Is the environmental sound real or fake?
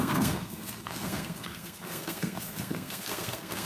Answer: fake